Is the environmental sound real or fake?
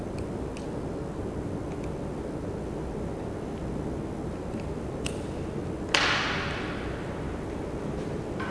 real